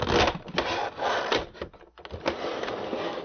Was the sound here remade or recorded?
recorded